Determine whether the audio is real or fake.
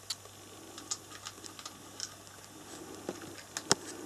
real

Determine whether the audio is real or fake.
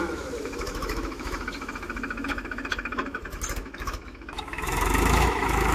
fake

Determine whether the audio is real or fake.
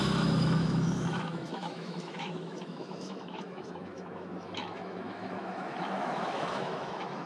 fake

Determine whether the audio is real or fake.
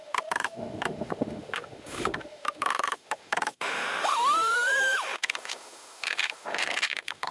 fake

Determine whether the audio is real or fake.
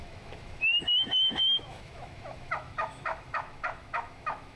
fake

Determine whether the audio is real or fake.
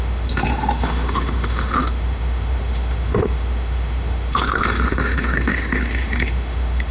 fake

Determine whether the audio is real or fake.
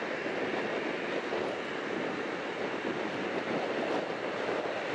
real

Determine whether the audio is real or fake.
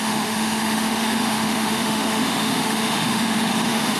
fake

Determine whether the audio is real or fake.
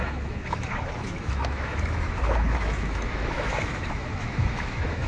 fake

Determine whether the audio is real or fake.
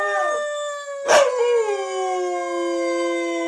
real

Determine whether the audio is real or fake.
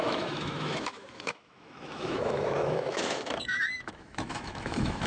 fake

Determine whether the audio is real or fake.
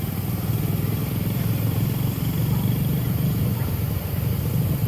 real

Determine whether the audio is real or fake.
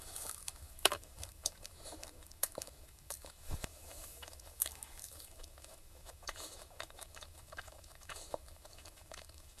fake